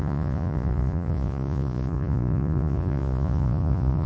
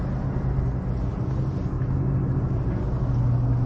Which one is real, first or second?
second